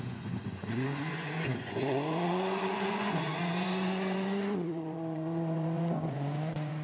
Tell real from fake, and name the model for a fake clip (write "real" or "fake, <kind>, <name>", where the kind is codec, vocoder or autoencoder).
fake, vocoder, Vocos